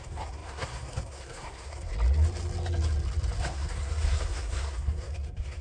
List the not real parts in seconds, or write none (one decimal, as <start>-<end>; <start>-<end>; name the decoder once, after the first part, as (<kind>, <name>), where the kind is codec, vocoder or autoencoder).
0.0-1.9 (codec, SNAC); 3.5-5.6